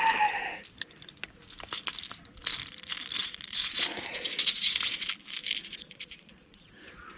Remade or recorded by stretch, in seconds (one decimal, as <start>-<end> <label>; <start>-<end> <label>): 0.0-3.2 recorded; 3.2-5.1 remade; 5.1-5.6 recorded; 5.6-7.2 remade